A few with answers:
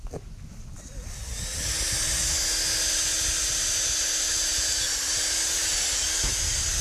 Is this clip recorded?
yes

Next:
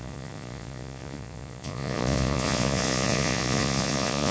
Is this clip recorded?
no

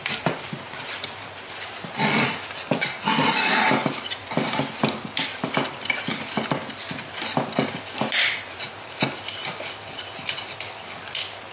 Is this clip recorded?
yes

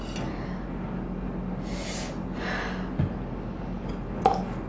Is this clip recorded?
yes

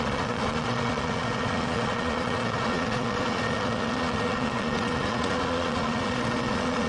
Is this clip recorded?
no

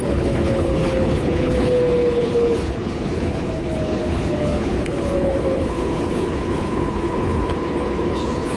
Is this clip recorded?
no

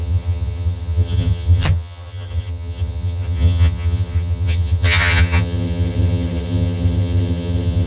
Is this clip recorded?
no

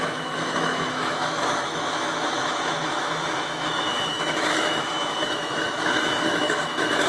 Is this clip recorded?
no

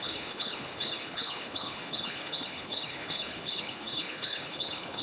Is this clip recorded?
no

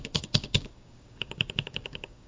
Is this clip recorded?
no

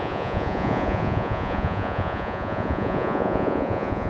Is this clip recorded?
no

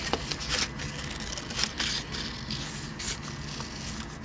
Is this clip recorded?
yes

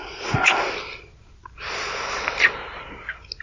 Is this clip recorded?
yes